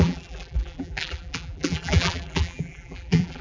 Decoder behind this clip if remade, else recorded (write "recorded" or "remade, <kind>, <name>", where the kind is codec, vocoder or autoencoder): remade, vocoder, BigVGAN v2